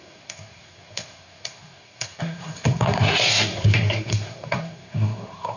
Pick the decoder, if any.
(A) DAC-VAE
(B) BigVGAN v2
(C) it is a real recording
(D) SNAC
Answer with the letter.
D